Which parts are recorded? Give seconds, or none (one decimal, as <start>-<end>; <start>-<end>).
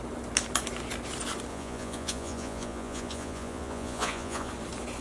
0.0-1.5; 4.5-5.0